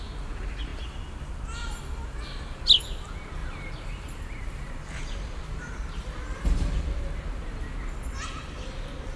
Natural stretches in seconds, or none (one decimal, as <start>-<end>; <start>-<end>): 0.0-3.4; 7.6-9.2